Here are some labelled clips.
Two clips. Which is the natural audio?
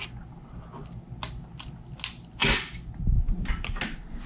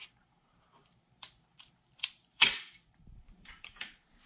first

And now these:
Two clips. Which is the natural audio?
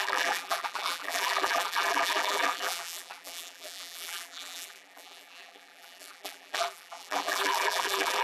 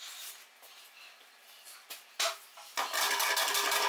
second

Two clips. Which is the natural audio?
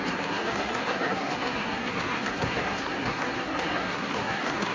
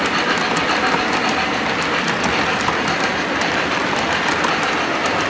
second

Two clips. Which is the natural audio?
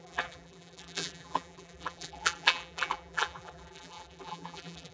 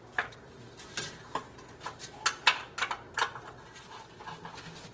second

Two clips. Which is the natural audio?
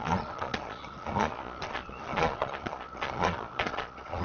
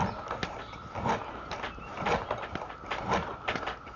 second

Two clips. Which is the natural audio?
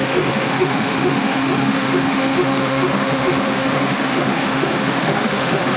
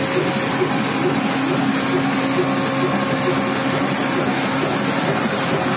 second